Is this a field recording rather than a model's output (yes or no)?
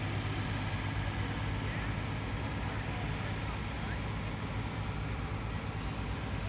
yes